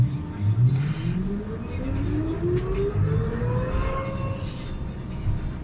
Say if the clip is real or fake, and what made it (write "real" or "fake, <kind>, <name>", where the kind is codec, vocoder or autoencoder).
real